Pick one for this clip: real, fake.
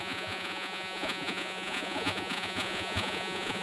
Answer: fake